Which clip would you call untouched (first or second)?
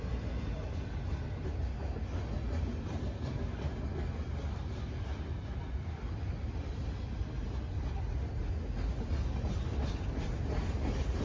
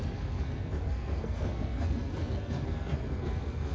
first